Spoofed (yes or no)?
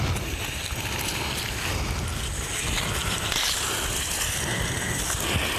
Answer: no